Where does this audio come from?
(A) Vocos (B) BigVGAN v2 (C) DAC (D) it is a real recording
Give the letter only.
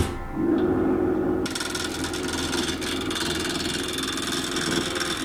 D